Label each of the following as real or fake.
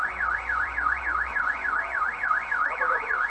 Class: fake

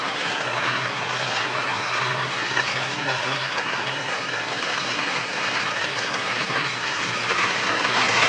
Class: fake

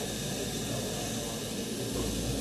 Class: real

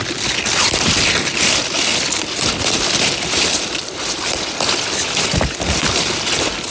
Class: real